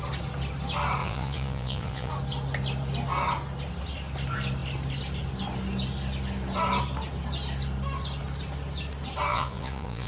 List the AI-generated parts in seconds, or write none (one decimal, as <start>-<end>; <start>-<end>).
1.0-2.1; 9.3-10.1